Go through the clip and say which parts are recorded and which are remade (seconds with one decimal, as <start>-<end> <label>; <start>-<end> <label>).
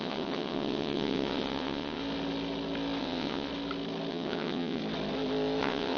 0.0-2.0 remade; 2.0-3.0 recorded; 3.0-3.5 remade; 3.5-4.1 recorded; 4.1-4.8 remade; 4.8-5.6 recorded; 5.6-6.0 remade